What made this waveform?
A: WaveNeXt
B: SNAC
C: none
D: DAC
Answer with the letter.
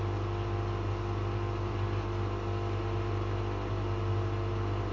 C